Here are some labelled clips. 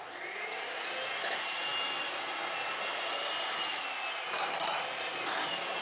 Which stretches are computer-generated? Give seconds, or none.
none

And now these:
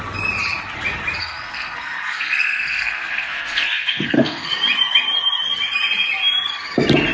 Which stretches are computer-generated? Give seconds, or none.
1.2-4.5

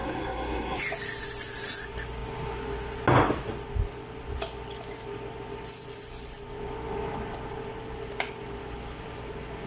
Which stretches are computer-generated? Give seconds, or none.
0.0-0.8

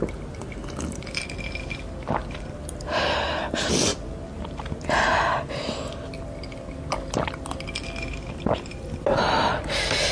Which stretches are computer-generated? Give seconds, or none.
none

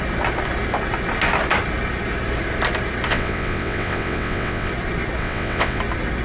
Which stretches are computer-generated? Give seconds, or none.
3.1-4.7; 5.2-5.8

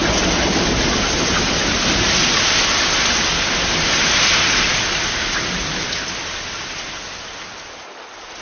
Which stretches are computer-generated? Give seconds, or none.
none

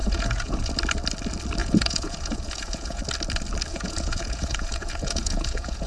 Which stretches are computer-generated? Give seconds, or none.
0.0-0.7; 1.6-3.0; 3.7-5.9